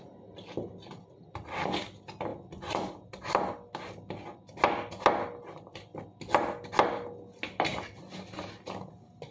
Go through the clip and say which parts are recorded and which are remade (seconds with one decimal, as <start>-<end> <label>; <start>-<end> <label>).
0.0-9.3 recorded